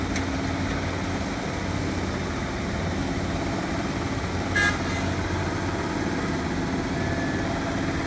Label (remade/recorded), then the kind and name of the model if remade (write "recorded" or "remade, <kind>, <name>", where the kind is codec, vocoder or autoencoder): recorded